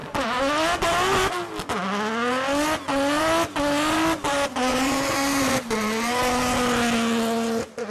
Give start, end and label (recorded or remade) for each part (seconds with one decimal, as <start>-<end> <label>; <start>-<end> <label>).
0.0-4.7 recorded; 4.7-6.1 remade; 6.1-7.9 recorded